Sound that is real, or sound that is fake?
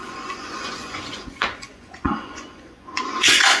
fake